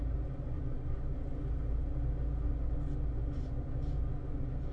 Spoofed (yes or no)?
no